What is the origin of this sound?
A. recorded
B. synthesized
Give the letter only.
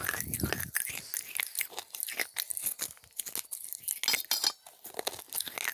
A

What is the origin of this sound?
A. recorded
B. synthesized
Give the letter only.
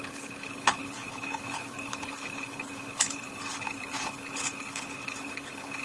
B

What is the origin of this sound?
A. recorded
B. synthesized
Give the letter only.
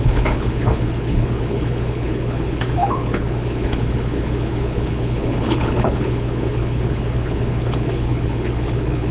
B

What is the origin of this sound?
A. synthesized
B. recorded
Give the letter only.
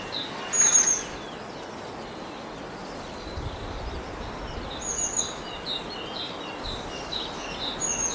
B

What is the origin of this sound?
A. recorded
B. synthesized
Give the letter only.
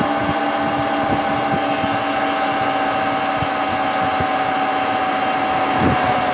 A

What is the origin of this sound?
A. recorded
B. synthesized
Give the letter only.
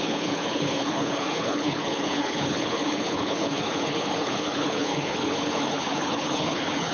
B